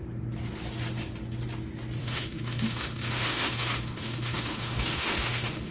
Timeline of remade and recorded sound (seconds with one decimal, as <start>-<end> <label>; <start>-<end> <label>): 0.0-2.0 recorded; 2.0-5.7 remade